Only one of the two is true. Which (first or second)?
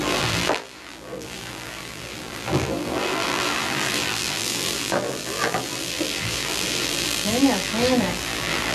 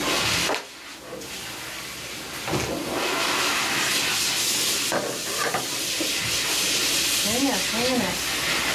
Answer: second